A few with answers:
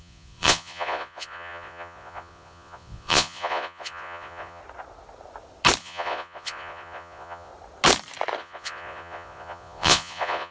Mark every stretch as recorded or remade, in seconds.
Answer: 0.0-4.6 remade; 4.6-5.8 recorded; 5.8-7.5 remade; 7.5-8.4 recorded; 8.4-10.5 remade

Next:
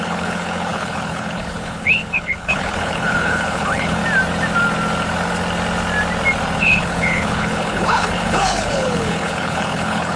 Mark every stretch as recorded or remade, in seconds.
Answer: 0.0-4.0 remade; 4.0-6.6 recorded; 6.6-10.2 remade

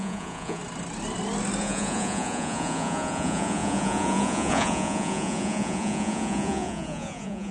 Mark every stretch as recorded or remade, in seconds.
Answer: 0.0-0.6 remade; 0.6-1.6 recorded; 1.6-7.5 remade